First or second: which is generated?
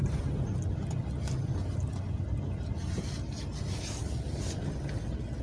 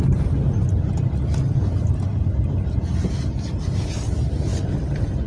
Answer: second